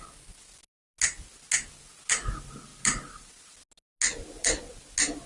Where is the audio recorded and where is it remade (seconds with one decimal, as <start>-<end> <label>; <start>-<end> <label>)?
0.0-5.3 recorded